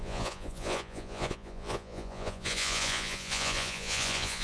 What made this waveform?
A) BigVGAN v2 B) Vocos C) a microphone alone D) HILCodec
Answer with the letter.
B